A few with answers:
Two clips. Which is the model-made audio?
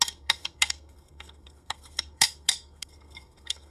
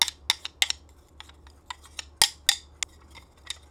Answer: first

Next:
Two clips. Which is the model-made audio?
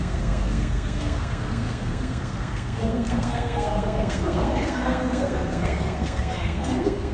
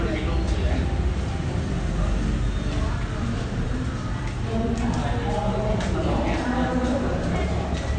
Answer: first